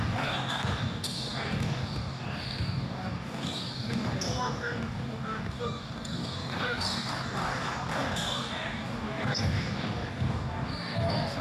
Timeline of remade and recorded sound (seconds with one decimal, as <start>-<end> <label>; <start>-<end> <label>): 0.0-11.4 remade

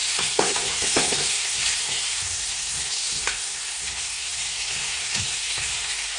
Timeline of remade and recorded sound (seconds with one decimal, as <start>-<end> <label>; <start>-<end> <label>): 0.0-6.2 remade

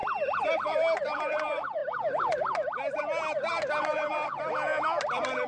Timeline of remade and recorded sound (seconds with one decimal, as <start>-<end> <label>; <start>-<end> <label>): 0.0-1.2 remade; 1.2-5.5 recorded

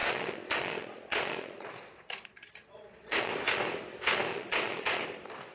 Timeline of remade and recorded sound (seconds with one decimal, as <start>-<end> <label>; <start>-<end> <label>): 0.0-3.3 remade; 3.3-4.3 recorded; 4.3-5.0 remade; 5.0-5.5 recorded